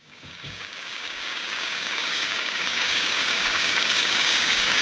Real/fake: fake